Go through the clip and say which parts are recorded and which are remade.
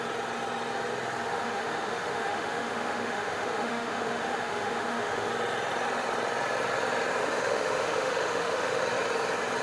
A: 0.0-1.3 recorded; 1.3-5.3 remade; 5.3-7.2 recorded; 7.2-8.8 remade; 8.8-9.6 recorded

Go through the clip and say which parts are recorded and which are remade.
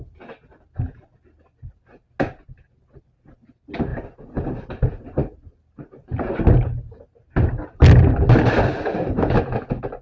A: 0.0-10.0 recorded